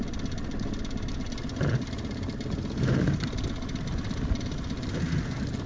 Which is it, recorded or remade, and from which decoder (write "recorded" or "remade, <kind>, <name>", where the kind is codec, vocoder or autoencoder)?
recorded